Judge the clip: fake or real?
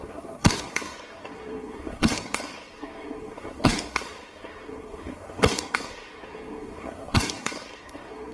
fake